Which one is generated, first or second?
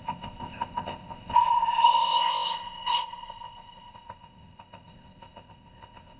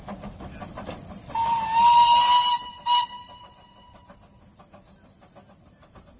first